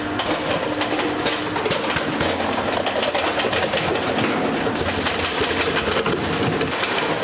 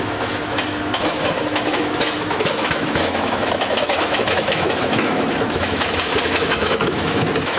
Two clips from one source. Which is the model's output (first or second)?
second